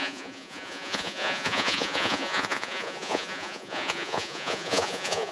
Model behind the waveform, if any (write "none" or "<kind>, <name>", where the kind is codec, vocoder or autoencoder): vocoder, Vocos